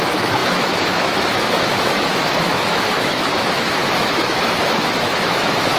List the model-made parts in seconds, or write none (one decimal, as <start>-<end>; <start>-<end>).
0.0-5.8